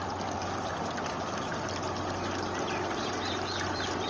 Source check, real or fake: real